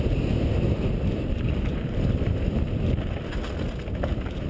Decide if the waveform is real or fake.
real